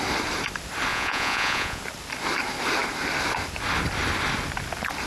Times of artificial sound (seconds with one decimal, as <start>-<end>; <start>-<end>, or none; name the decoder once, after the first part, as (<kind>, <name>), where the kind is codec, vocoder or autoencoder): 0.9-1.8 (vocoder, Vocos)